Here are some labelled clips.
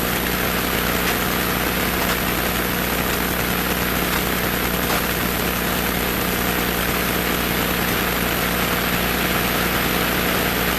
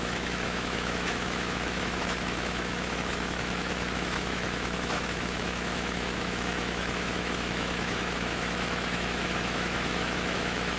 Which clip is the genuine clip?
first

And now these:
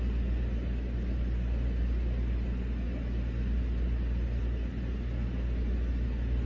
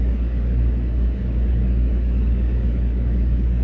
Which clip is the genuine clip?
first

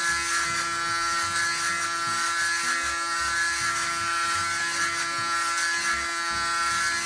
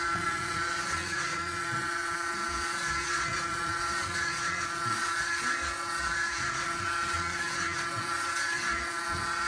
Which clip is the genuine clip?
first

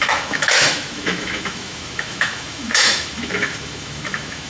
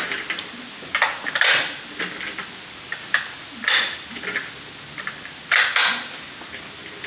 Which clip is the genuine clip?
second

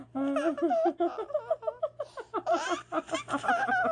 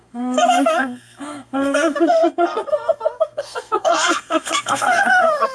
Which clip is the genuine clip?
first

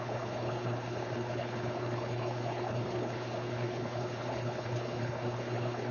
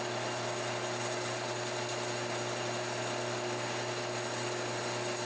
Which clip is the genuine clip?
second